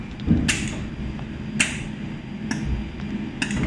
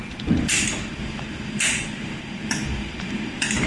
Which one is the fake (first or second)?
second